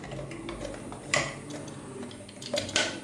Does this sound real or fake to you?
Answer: real